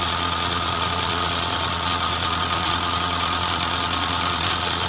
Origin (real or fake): fake